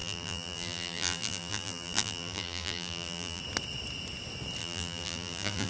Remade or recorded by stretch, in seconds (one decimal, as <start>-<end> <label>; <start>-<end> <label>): 0.0-3.4 remade; 3.4-4.6 recorded; 4.6-5.7 remade